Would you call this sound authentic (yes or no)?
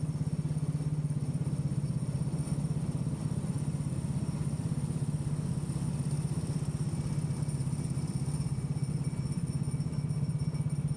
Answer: yes